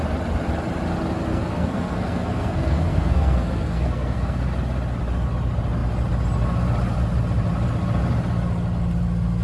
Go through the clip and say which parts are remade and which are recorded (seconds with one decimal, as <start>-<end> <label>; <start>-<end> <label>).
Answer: 0.0-1.3 recorded; 1.3-4.4 remade; 4.4-9.4 recorded